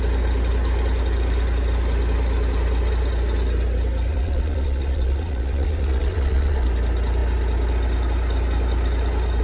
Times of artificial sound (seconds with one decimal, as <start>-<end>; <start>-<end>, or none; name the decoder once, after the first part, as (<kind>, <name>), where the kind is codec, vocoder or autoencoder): 4.1-6.7 (vocoder, Vocos)